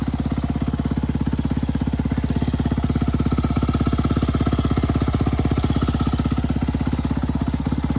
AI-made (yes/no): no